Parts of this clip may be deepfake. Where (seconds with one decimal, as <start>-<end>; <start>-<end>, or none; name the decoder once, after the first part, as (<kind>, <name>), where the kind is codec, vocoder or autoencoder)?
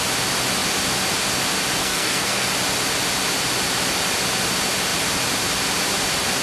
1.8-2.5 (codec, SNAC)